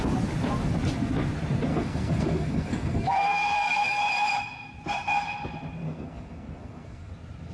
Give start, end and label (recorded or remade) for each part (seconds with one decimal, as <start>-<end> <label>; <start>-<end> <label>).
0.0-1.7 recorded; 1.7-4.0 remade; 4.0-5.8 recorded; 5.8-7.1 remade; 7.1-7.5 recorded